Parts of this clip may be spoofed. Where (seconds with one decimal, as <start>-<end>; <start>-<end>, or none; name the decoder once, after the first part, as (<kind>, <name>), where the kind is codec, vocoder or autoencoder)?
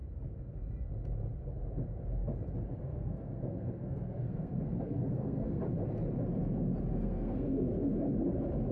2.8-5.6 (codec, SNAC); 6.9-7.7